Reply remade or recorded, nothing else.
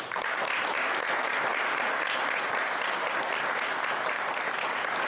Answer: recorded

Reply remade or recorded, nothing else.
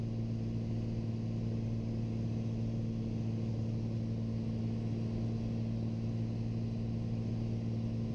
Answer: recorded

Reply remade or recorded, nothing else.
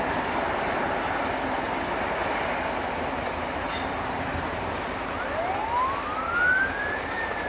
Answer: recorded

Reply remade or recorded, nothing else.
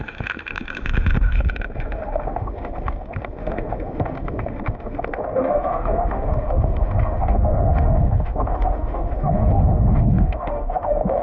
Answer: remade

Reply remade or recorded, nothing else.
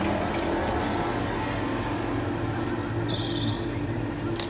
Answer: recorded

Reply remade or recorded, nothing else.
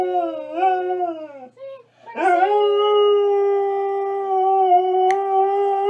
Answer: recorded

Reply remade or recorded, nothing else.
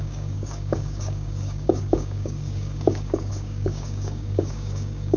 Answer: remade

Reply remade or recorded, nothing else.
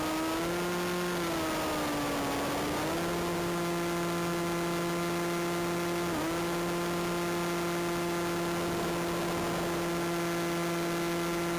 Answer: recorded